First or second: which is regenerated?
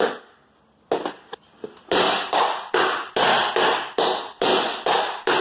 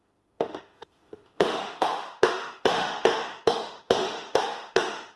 second